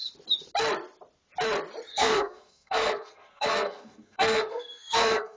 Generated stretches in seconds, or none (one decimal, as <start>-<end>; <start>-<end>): 1.9-5.4